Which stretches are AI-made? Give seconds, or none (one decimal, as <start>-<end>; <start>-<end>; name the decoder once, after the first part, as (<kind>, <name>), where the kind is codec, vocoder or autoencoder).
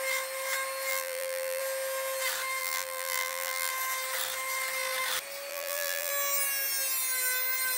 0.9-1.6 (vocoder, BigVGAN v2); 2.6-3.7; 5.5-6.1